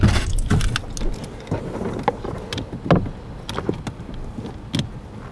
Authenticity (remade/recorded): recorded